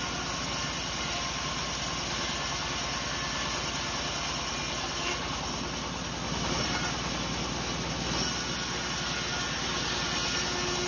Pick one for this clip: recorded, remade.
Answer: recorded